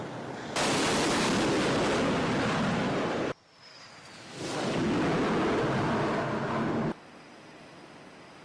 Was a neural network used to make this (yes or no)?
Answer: no